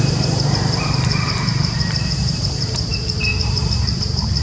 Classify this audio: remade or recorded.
remade